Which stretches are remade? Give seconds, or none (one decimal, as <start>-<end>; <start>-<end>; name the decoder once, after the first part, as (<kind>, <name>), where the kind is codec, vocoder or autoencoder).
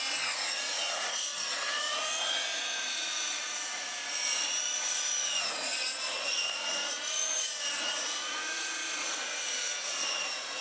0.0-10.6 (vocoder, Vocos)